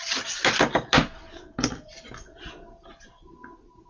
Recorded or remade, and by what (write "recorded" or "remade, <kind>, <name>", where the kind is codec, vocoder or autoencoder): recorded